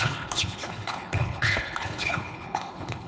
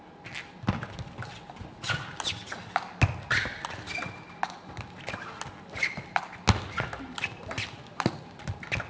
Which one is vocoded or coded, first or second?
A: first